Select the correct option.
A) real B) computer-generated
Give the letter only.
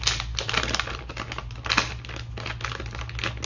A